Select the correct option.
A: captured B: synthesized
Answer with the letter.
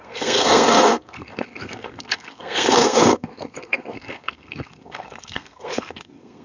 B